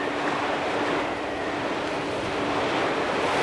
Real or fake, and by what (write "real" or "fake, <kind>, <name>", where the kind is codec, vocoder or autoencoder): real